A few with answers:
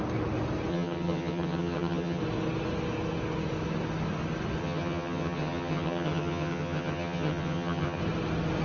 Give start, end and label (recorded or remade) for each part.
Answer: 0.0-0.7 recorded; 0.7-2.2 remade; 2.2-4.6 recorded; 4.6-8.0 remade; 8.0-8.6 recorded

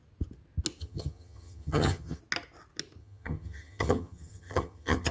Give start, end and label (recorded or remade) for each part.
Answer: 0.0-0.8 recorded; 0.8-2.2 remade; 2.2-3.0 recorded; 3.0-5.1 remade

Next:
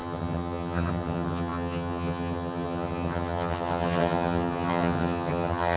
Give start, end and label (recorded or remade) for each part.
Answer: 0.0-5.8 remade

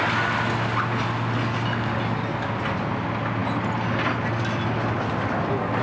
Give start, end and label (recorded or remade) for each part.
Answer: 0.0-5.8 recorded

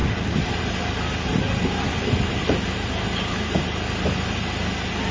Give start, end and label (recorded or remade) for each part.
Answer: 0.0-5.1 recorded

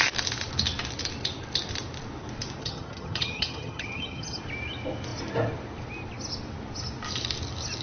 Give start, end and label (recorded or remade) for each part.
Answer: 0.0-2.6 recorded; 2.6-4.4 remade; 4.4-7.8 recorded

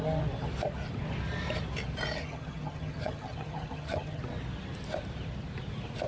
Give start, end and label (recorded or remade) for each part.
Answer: 0.0-2.2 recorded; 2.2-4.2 remade; 4.2-6.1 recorded

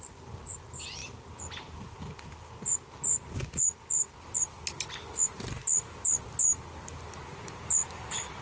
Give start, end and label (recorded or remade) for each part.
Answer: 0.0-8.4 recorded